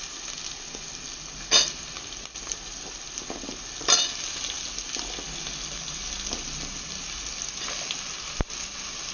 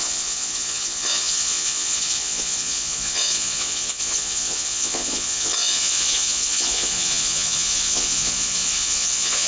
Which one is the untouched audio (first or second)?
first